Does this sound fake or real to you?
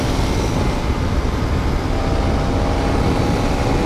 real